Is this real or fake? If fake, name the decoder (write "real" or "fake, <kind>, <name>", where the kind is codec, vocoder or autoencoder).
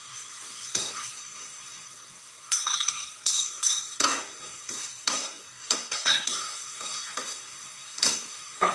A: fake, codec, SNAC